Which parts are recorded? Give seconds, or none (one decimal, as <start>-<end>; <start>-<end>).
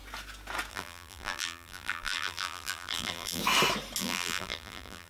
0.0-0.7; 3.4-4.0